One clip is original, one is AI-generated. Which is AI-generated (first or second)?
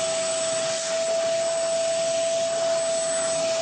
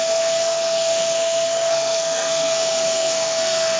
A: second